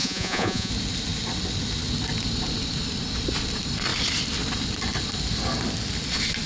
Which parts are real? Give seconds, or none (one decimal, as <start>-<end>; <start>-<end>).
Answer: 0.7-6.5